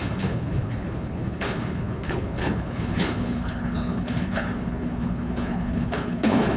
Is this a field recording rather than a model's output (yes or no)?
no